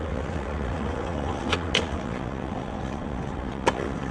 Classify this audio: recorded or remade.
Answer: remade